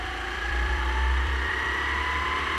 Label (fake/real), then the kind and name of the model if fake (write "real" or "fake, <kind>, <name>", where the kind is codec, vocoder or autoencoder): fake, vocoder, BigVGAN v2